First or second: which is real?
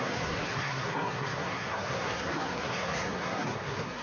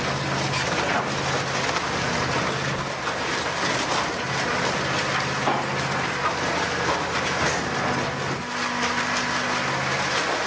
second